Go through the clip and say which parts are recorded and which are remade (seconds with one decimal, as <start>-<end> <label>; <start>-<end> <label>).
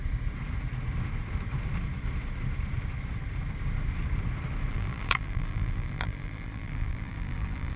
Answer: 0.0-4.7 recorded; 4.7-7.8 remade